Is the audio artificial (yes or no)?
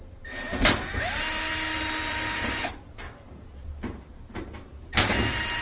yes